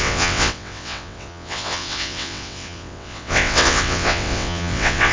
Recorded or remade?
remade